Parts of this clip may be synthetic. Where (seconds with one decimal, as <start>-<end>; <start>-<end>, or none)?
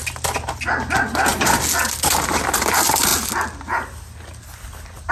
none